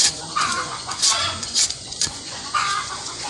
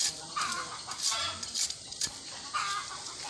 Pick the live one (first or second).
second